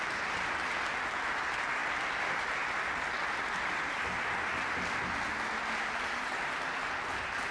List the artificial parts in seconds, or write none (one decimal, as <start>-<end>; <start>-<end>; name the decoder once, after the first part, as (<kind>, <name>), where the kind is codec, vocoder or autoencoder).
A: none